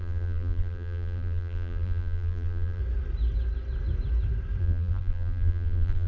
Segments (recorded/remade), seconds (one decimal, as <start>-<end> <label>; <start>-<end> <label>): 0.0-2.8 remade; 2.8-4.6 recorded; 4.6-6.1 remade